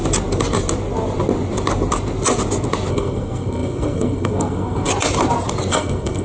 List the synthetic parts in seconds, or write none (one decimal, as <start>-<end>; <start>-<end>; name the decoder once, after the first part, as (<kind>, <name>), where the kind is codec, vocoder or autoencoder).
2.9-4.9 (codec, SNAC); 5.7-6.2

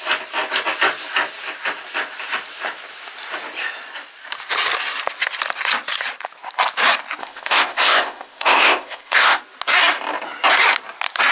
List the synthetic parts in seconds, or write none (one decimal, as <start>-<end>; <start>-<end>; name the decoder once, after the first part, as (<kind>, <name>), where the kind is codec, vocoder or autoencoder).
7.2-9.4 (codec, ZipCodec)

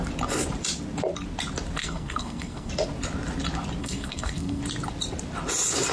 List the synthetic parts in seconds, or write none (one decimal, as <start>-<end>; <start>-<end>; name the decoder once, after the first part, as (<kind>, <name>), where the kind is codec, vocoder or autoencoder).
1.8-2.7 (codec, SNAC); 3.8-4.6

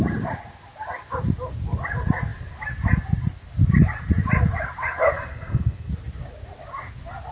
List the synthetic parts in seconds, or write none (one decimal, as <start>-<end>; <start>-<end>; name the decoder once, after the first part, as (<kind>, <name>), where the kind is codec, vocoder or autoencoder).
5.3-5.9 (codec, SNAC)

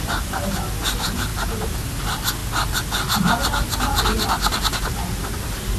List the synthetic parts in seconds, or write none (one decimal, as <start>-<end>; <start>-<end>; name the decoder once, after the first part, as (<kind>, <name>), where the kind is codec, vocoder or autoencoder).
none